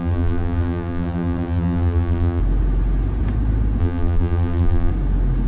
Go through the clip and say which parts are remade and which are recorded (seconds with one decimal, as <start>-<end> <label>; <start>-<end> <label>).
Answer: 0.0-2.4 remade; 2.4-3.8 recorded; 3.8-4.9 remade; 4.9-5.5 recorded